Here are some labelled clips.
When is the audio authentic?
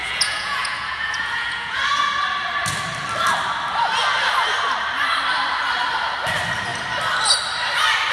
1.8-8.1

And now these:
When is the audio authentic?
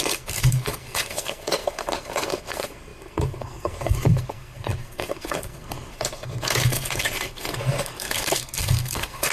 none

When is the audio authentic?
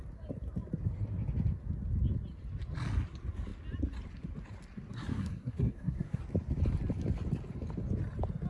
0.0-5.1; 6.2-8.5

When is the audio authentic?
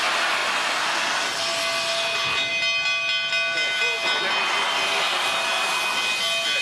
0.0-6.6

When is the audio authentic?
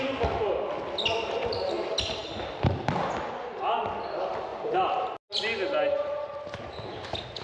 0.0-4.5; 5.1-7.4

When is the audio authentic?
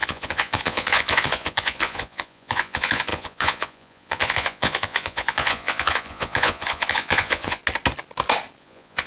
7.6-8.6